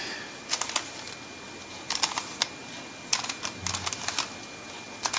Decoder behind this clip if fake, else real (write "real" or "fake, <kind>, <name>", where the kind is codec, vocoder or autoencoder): real